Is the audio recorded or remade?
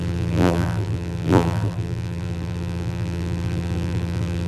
remade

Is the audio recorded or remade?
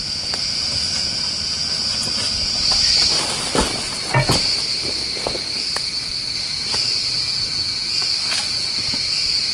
recorded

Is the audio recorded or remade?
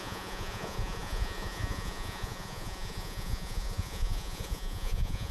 remade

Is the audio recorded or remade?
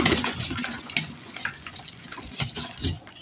remade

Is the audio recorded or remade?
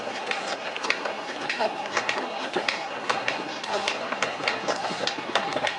remade